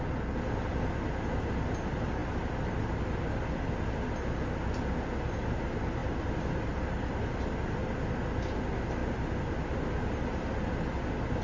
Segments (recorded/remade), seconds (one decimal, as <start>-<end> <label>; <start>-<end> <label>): 0.0-11.4 recorded